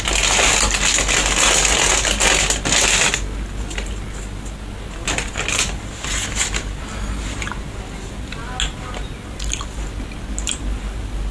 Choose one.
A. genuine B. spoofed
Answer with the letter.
A